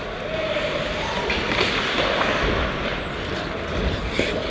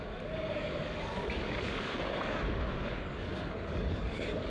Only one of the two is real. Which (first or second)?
first